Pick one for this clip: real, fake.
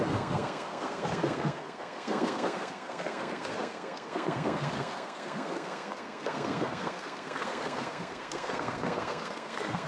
fake